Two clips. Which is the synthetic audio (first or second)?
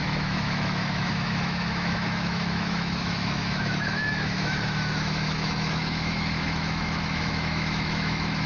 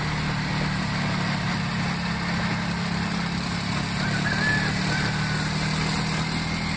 first